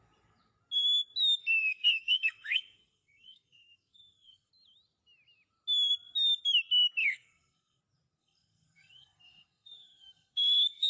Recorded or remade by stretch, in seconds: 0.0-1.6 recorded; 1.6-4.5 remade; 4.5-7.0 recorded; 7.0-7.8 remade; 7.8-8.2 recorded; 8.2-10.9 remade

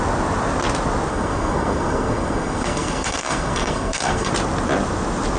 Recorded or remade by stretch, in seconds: 0.0-1.1 recorded; 1.1-4.3 remade; 4.3-5.4 recorded

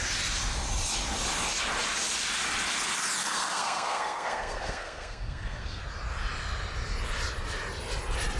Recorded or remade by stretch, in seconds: 0.0-3.2 recorded; 3.2-5.8 remade; 5.8-8.4 recorded

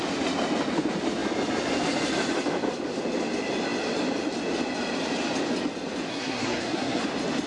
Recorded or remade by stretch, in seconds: 0.0-6.1 recorded; 6.1-7.0 remade; 7.0-7.5 recorded

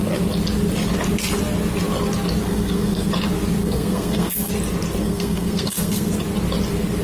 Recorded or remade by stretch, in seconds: 0.0-2.4 recorded; 2.4-3.1 remade; 3.1-3.6 recorded; 3.6-4.5 remade; 4.5-5.0 recorded; 5.0-6.1 remade; 6.1-7.0 recorded

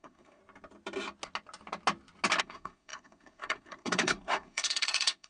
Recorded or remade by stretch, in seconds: 0.0-0.4 remade; 0.4-2.4 recorded; 2.4-5.3 remade

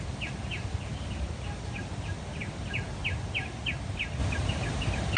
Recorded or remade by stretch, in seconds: 0.0-5.2 recorded